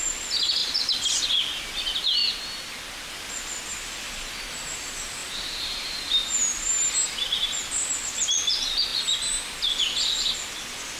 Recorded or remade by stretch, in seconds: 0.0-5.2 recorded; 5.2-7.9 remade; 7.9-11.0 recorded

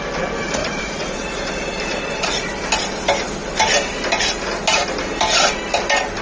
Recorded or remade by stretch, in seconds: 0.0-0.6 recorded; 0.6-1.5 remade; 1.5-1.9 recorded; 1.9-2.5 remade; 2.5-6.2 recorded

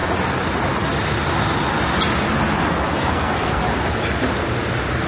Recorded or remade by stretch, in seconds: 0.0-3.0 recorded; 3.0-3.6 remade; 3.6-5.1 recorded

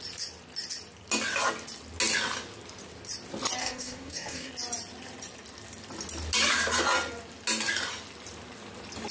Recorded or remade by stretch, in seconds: 0.0-3.6 recorded; 3.6-4.5 remade; 4.5-9.1 recorded

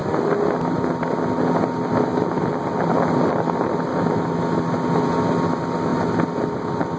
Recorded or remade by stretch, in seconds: 0.0-3.9 recorded; 3.9-4.6 remade; 4.6-7.0 recorded